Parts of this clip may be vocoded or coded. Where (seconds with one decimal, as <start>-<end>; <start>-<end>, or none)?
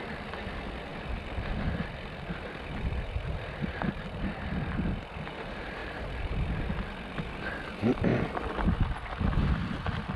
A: 0.0-10.2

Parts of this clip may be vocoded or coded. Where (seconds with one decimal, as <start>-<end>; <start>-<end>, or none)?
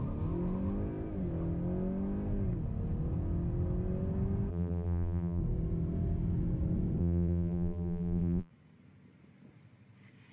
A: 4.5-5.4; 7.0-8.5